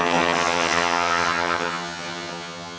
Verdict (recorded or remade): remade